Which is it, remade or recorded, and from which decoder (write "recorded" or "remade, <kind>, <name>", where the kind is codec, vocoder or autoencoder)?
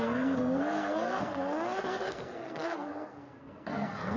remade, codec, SNAC